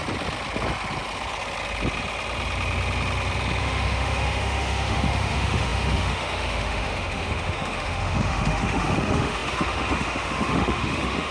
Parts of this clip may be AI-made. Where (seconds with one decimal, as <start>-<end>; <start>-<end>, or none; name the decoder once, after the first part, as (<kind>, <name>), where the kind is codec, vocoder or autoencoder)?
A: 3.6-11.3 (autoencoder, DAC-VAE)